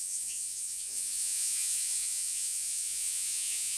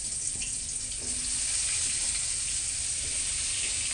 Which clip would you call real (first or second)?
second